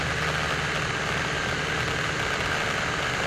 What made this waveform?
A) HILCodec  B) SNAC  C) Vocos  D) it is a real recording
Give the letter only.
D